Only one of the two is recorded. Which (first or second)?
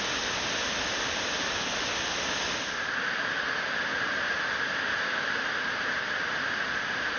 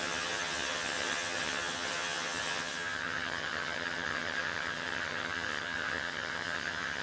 first